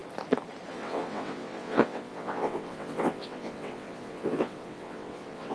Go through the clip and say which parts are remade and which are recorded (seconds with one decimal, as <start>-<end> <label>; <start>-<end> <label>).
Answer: 0.0-0.7 recorded; 0.7-5.5 remade